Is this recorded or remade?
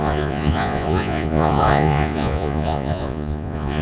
remade